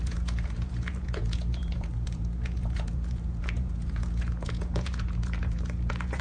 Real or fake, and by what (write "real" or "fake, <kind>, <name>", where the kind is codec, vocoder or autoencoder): fake, vocoder, Vocos